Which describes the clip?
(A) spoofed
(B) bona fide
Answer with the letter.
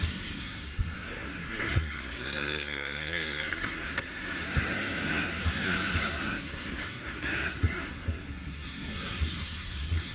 A